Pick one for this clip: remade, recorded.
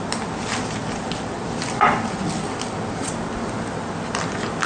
recorded